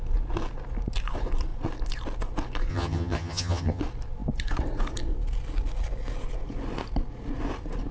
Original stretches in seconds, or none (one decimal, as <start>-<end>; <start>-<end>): 0.0-2.7; 3.8-7.9